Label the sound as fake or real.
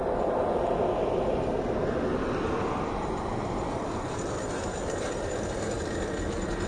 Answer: real